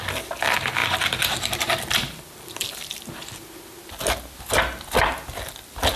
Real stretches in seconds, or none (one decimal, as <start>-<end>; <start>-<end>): 0.0-6.0